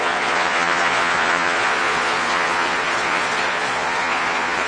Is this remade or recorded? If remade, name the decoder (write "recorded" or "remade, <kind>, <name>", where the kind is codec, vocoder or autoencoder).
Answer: remade, vocoder, Vocos